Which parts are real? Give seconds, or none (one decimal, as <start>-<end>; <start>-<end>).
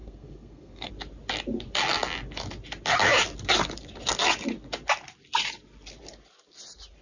0.9-7.0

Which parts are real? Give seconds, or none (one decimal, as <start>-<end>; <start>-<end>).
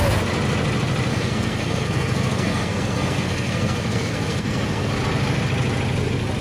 0.0-1.1; 4.9-6.4